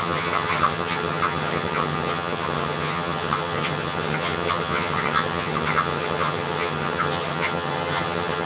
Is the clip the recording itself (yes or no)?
no